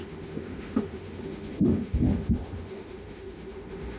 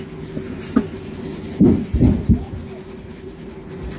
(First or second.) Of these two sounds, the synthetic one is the first